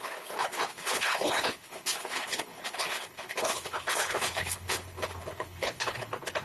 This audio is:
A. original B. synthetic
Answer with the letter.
B